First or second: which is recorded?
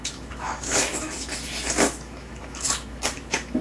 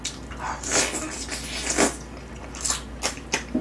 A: second